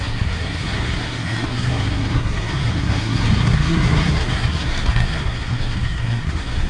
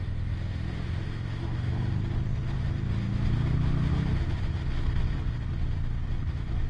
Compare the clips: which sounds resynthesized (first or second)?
first